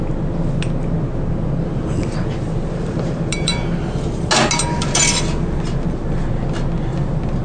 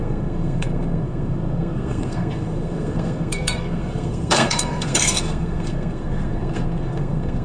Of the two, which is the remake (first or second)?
second